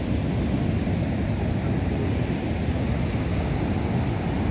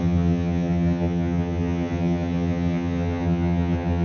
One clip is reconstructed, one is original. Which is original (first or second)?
first